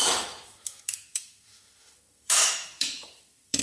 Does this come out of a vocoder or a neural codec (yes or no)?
yes